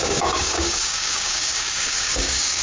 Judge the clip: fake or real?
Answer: fake